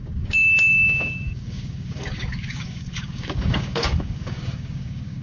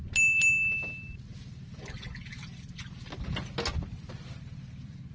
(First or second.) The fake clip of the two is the first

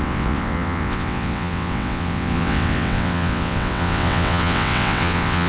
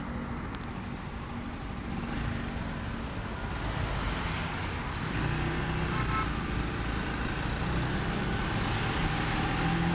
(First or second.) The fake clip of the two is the first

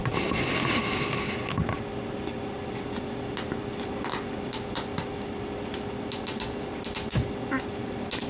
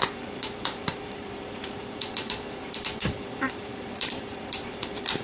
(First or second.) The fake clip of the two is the second